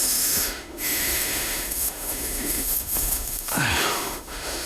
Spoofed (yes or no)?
yes